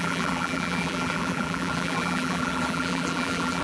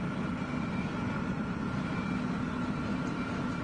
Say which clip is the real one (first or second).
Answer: second